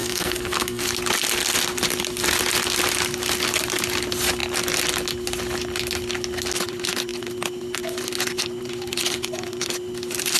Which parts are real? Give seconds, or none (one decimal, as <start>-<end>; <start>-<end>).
0.8-10.4